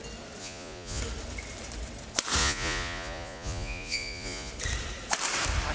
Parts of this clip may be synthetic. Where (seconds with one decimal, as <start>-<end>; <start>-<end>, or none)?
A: 0.4-1.0; 2.4-4.5